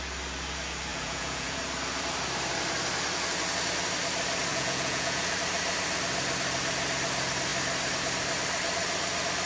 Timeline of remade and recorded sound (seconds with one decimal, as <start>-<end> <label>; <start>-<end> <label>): 0.0-0.9 recorded; 0.9-1.6 remade; 1.6-4.5 recorded; 4.5-5.2 remade; 5.2-9.5 recorded

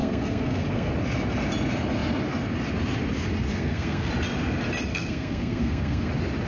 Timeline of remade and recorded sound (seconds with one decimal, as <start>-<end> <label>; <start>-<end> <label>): 0.0-0.9 remade; 0.9-3.5 recorded; 3.5-4.1 remade; 4.1-4.9 recorded; 4.9-6.1 remade; 6.1-6.5 recorded

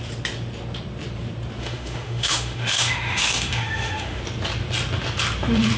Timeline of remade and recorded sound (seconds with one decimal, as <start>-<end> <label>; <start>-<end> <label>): 0.0-1.6 recorded; 1.6-4.2 remade; 4.2-5.8 recorded

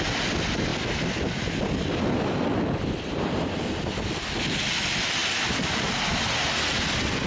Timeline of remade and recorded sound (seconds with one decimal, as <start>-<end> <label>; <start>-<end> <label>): 0.0-7.3 recorded

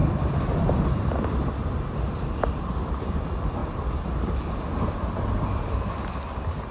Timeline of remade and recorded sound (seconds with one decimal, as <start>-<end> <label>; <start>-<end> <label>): 0.0-6.7 recorded

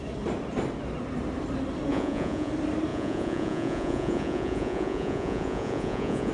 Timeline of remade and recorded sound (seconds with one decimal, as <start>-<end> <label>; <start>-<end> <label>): 0.0-1.9 recorded; 1.9-2.5 remade; 2.5-2.9 recorded; 2.9-6.3 remade

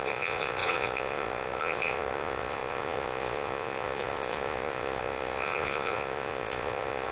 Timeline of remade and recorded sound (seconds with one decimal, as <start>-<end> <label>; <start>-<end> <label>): 0.0-7.1 remade

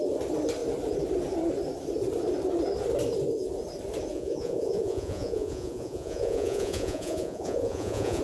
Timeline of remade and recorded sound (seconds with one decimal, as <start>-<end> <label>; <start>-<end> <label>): 0.0-4.1 recorded; 4.1-8.2 remade